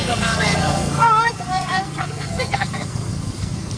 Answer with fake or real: fake